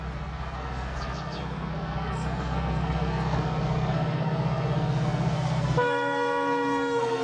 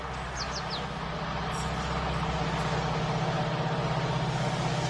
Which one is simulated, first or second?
first